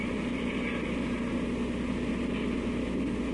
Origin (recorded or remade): recorded